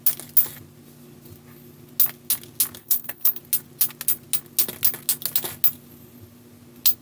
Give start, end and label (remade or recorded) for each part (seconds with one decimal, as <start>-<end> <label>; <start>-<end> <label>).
0.0-2.8 recorded; 2.8-3.4 remade; 3.4-7.0 recorded